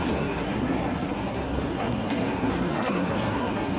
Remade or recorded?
remade